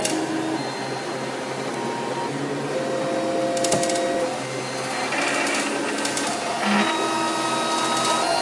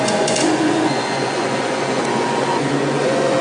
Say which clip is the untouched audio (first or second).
first